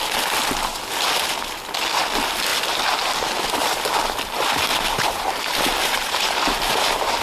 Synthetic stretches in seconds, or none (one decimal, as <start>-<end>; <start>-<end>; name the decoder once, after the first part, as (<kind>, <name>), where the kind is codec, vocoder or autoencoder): 4.7-7.2 (vocoder, BigVGAN v2)